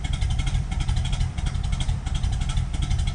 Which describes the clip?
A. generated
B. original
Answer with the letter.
A